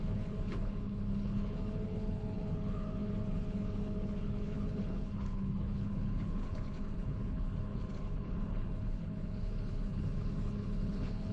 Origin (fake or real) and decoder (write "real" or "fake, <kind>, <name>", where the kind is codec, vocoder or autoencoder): fake, codec, HILCodec